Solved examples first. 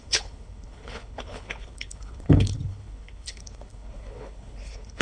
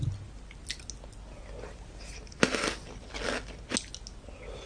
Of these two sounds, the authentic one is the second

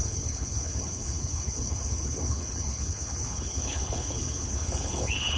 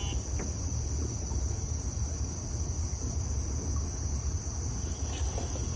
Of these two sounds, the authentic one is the second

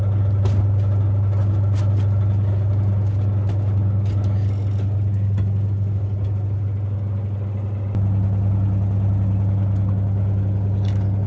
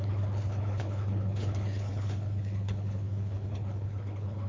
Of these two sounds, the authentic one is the first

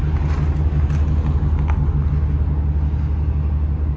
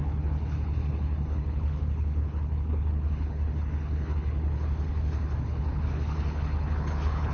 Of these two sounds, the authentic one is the first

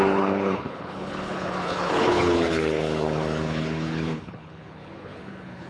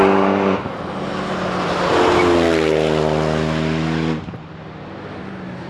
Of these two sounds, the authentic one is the second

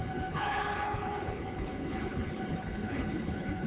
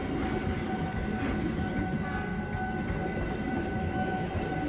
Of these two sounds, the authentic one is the second